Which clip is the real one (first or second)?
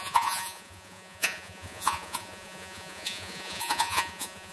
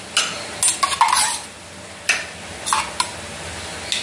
second